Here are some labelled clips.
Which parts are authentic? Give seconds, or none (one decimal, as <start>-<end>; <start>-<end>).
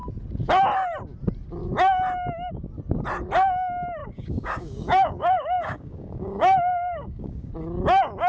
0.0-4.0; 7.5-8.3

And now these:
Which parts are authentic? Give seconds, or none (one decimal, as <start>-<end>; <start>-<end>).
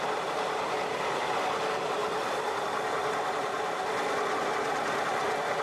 0.0-5.6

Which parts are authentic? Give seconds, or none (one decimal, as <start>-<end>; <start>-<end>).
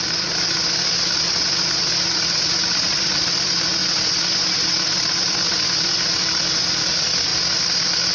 0.0-8.1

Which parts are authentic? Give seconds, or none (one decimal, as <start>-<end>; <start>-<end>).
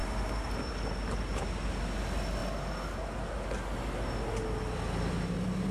0.7-5.7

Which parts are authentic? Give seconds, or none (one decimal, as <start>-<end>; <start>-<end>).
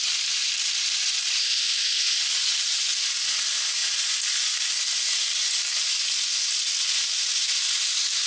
0.0-1.4; 2.2-8.3